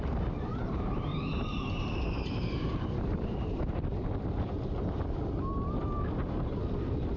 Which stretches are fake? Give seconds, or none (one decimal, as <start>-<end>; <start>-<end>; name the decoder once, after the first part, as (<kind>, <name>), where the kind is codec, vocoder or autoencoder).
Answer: 0.5-2.7 (vocoder, BigVGAN v2); 3.1-3.9